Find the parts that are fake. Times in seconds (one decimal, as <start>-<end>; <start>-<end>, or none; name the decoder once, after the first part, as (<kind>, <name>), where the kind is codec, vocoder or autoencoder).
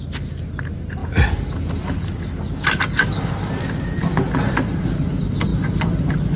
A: none